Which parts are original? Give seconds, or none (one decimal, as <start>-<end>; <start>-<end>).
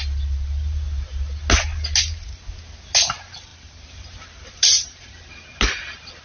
0.0-3.5; 5.1-6.2